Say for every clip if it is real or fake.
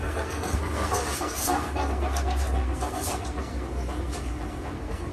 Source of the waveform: fake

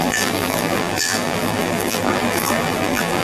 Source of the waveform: fake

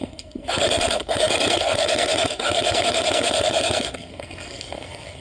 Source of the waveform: fake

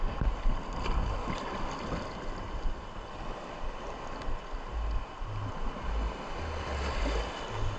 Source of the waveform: real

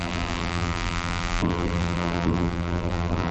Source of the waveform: fake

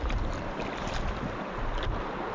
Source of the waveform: real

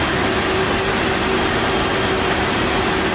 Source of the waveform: real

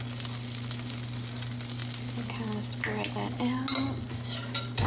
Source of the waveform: real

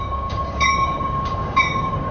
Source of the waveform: fake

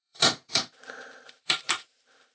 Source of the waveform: fake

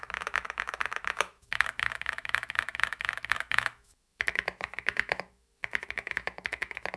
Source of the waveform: fake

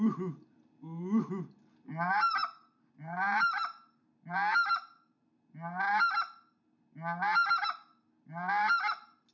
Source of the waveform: real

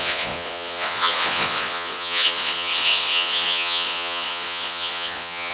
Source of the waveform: fake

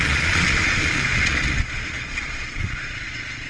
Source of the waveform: fake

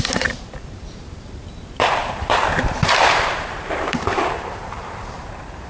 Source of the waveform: fake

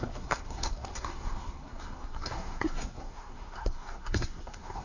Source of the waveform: fake